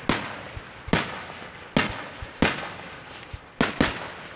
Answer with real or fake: real